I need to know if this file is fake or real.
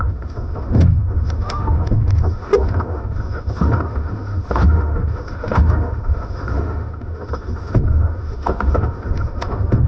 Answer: fake